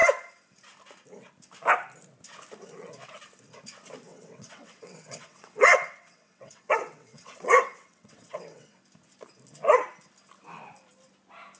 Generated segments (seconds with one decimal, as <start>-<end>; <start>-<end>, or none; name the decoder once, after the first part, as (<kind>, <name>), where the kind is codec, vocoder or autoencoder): 4.1-8.8 (vocoder, WaveNeXt)